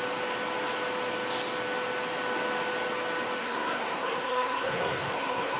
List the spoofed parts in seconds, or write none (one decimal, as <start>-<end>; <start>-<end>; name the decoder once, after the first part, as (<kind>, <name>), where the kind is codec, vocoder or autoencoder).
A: 3.4-5.6 (codec, SNAC)